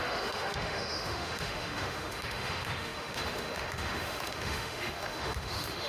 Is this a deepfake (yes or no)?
yes